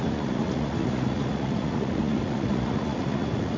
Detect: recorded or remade remade